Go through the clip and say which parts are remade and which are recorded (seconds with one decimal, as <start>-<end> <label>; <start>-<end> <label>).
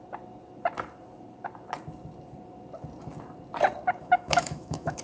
0.0-4.0 recorded; 4.0-5.0 remade